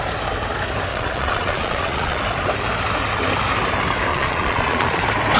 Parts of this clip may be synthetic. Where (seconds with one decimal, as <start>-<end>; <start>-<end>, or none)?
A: 0.9-2.2; 4.1-5.0